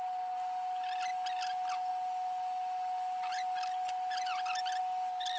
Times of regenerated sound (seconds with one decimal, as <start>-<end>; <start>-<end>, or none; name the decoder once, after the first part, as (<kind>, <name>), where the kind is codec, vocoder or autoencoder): none